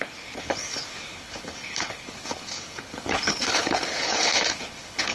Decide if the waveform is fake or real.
fake